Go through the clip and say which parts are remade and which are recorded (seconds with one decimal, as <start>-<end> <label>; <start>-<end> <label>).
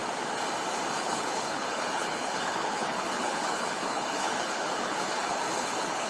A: 0.0-1.0 recorded; 1.0-6.1 remade